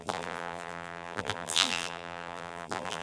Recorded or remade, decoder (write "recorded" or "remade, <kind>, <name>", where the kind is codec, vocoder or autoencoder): remade, vocoder, BigVGAN v2